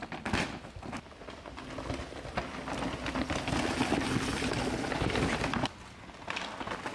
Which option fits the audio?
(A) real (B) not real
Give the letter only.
A